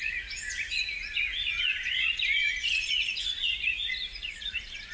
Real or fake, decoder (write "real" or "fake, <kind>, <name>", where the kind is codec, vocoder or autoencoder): fake, vocoder, Vocos